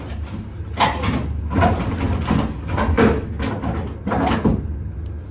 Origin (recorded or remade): recorded